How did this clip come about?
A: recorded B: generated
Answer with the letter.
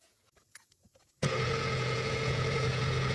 B